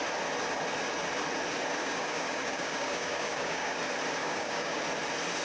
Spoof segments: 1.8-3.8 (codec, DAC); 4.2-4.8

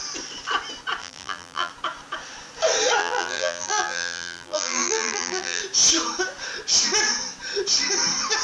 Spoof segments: 1.0-1.7 (vocoder, BigVGAN v2); 3.0-5.6

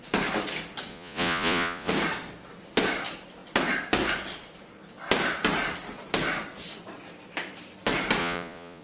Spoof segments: 0.9-1.9 (vocoder, Vocos); 8.2-8.8

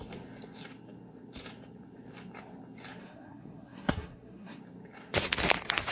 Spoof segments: 3.0-4.6 (codec, SNAC)

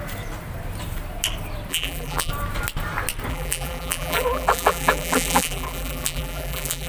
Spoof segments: 1.7-2.3 (vocoder, BigVGAN v2); 3.3-6.9

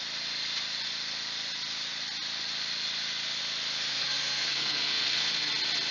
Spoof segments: 3.9-5.5 (codec, SNAC)

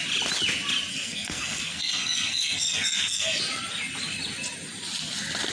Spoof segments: 0.9-3.4 (codec, SNAC)

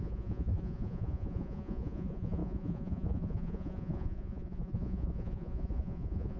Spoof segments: 0.0-6.4 (vocoder, Vocos)